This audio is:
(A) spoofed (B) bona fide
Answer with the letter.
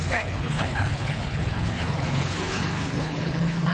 A